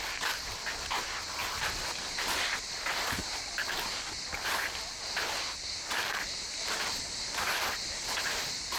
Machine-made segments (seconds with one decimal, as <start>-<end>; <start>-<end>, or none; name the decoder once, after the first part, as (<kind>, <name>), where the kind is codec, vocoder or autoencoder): 1.4-2.7 (vocoder, BigVGAN v2)